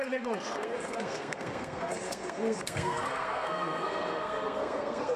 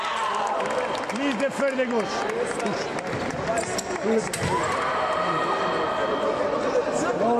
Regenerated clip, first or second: first